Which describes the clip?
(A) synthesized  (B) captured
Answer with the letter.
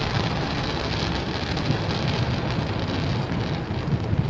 B